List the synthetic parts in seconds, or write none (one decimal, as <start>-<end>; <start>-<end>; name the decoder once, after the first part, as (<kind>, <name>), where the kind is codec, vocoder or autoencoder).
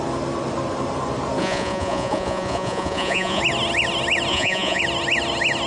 1.4-3.4 (vocoder, Vocos); 4.3-4.8